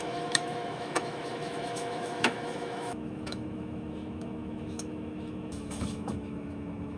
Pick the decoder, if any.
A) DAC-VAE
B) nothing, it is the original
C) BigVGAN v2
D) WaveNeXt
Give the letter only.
A